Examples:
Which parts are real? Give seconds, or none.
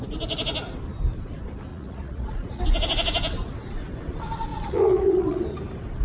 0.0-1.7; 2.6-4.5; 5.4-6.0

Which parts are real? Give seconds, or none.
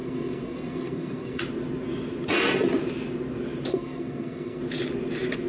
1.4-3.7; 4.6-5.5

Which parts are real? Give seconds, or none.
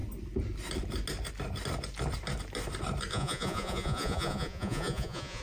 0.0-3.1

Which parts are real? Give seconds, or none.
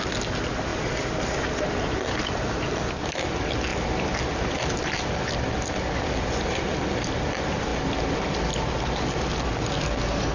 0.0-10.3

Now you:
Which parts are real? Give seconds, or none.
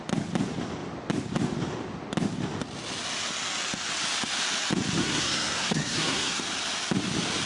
0.0-5.0; 6.4-7.5